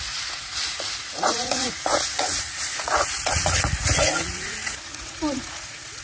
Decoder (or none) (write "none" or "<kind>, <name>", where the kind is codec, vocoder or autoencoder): vocoder, Vocos